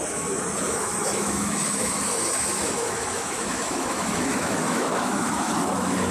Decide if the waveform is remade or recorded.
remade